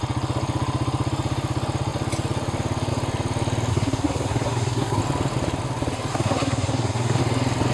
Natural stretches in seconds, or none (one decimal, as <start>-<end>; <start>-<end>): 0.0-3.7; 5.0-6.1; 7.2-7.7